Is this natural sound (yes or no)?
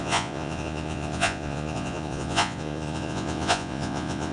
no